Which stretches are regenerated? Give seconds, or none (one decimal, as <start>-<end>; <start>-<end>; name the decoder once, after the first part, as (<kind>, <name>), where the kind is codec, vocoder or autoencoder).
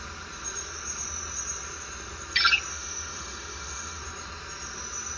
2.7-4.0 (autoencoder, DAC-VAE)